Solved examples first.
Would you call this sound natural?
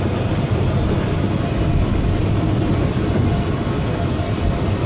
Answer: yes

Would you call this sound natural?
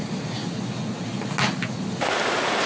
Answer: yes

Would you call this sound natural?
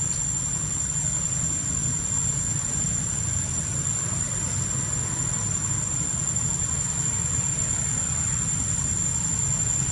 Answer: yes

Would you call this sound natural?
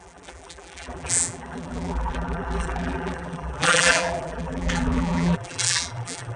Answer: no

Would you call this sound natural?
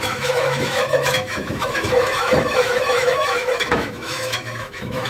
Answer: no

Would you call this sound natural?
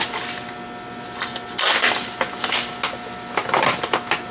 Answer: yes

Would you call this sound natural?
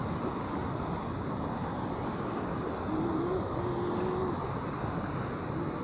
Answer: yes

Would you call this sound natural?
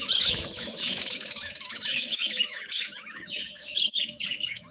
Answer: no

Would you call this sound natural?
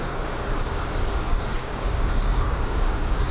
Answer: no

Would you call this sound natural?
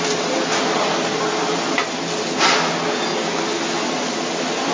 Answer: yes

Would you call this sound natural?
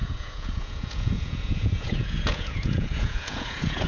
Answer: no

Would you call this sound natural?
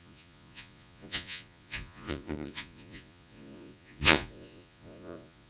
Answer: no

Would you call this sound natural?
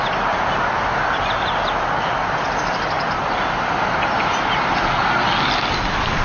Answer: yes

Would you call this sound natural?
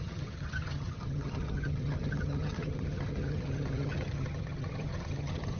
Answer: no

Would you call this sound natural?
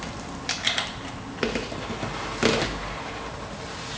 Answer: yes